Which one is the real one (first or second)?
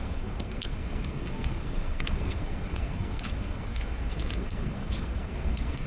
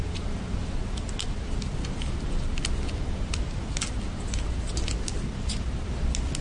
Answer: second